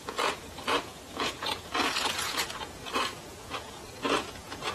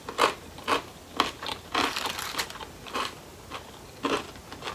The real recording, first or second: second